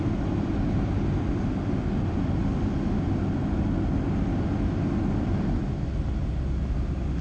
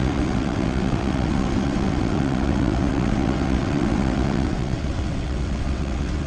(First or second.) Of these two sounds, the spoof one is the second